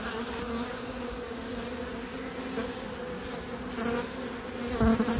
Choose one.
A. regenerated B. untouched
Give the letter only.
B